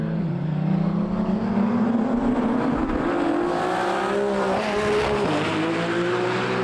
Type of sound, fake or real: real